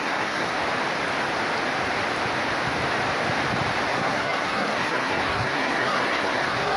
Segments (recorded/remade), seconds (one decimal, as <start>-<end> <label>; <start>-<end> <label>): 0.0-0.5 remade; 0.5-3.9 recorded; 3.9-6.8 remade